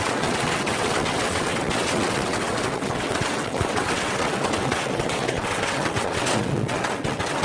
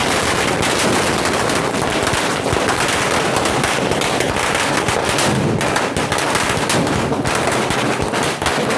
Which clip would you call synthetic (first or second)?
first